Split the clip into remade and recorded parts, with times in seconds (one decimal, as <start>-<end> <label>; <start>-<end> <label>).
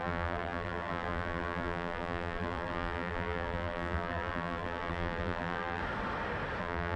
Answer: 0.0-5.8 remade; 5.8-6.6 recorded; 6.6-7.0 remade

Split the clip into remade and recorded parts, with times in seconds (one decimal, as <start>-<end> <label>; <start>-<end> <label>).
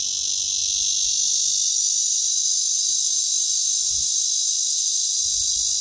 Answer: 0.0-1.7 recorded; 1.7-5.2 remade; 5.2-5.8 recorded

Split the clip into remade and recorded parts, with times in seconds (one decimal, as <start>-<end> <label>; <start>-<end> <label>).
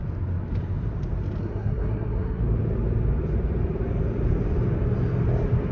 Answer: 0.0-1.4 recorded; 1.4-2.4 remade; 2.4-5.7 recorded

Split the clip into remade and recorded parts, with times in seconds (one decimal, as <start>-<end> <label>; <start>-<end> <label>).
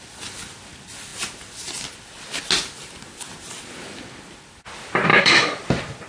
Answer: 0.0-5.1 recorded; 5.1-5.6 remade; 5.6-6.1 recorded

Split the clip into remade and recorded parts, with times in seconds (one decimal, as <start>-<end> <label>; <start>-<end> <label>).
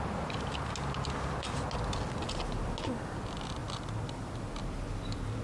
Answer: 0.0-3.6 recorded; 3.6-4.5 remade; 4.5-5.4 recorded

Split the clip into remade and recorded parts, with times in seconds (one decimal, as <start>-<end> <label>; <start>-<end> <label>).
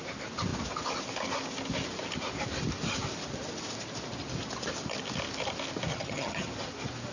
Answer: 0.0-5.9 recorded; 5.9-6.5 remade; 6.5-7.1 recorded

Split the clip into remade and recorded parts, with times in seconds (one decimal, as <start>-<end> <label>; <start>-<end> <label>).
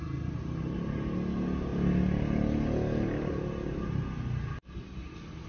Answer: 0.0-5.5 recorded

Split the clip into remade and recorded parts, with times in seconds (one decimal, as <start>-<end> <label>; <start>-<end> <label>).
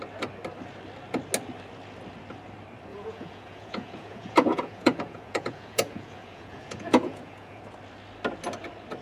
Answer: 0.0-2.9 recorded; 2.9-7.6 remade; 7.6-9.0 recorded